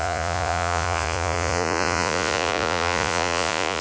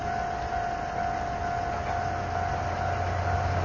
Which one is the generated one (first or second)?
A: first